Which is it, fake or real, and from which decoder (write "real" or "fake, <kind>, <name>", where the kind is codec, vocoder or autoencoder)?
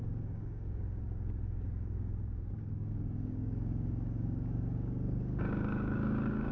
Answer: fake, codec, DAC